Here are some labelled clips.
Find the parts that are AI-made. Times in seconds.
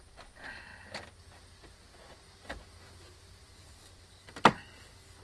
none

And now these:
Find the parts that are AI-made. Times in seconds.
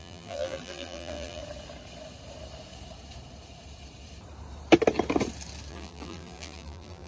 0.0-1.4 (vocoder, BigVGAN v2); 5.7-7.1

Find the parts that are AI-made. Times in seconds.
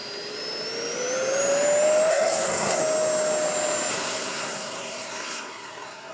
2.1-2.8 (codec, SNAC); 3.9-6.1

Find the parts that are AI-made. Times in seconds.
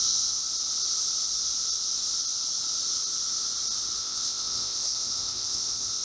0.0-0.4 (codec, ZipCodec); 4.0-6.0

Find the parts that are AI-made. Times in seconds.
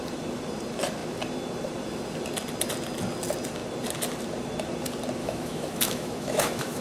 5.2-6.8 (autoencoder, DAC-VAE)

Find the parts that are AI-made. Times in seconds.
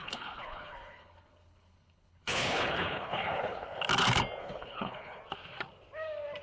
0.0-3.8 (codec, HILCodec); 4.4-5.2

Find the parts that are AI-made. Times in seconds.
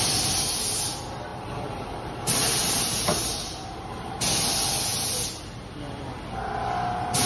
1.3-4.1 (vocoder, BigVGAN v2)